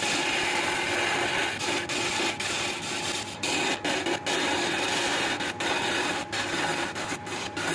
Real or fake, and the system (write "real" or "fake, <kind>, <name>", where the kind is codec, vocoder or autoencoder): real